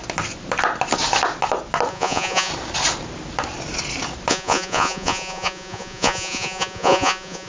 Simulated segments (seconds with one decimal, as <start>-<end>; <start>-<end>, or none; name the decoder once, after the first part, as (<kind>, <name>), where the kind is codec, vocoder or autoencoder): 1.9-2.5 (vocoder, Vocos); 4.3-7.5